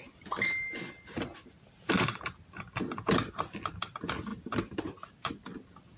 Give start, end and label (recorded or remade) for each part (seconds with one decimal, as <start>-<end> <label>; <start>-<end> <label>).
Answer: 0.0-1.3 recorded; 1.3-2.3 remade; 2.3-4.3 recorded; 4.3-5.3 remade; 5.3-6.0 recorded